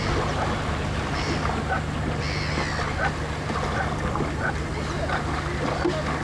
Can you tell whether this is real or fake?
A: real